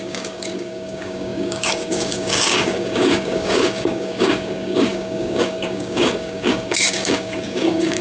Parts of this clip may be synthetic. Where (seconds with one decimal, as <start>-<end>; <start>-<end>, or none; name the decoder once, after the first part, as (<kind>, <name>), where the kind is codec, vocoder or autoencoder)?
0.0-8.0 (codec, DAC)